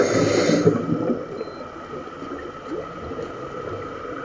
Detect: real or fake real